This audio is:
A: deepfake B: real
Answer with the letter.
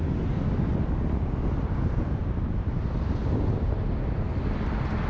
B